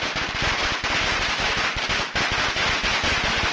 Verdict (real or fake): real